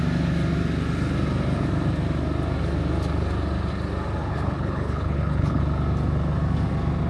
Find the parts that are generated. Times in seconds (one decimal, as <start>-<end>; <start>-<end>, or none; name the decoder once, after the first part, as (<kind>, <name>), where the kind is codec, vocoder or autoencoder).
4.2-5.6 (codec, HILCodec)